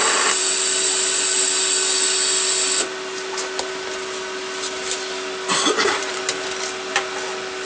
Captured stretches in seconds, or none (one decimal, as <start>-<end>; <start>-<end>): 0.0-5.5; 6.2-7.6